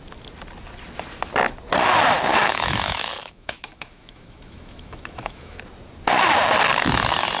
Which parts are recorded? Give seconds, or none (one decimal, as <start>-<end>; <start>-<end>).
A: 0.0-2.3; 5.6-7.4